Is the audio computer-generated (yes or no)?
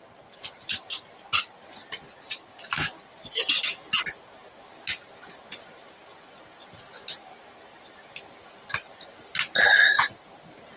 no